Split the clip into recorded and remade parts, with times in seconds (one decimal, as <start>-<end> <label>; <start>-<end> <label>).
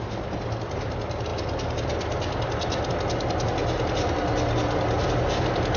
0.0-5.8 recorded